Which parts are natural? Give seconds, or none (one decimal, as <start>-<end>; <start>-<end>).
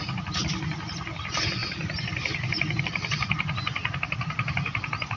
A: 0.0-5.2